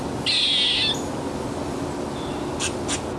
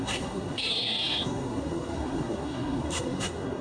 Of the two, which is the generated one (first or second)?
second